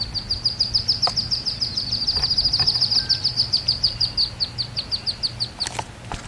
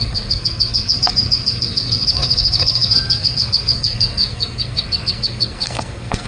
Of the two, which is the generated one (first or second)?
second